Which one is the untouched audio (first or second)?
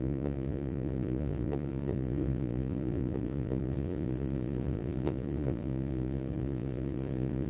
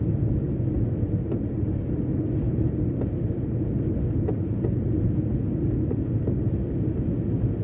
second